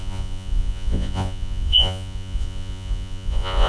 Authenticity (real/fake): fake